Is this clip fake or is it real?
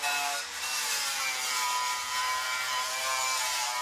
fake